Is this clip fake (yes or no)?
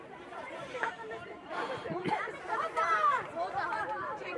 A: yes